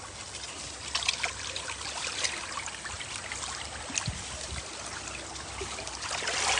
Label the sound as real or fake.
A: real